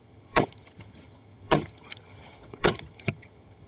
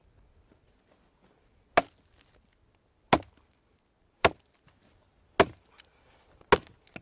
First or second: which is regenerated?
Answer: first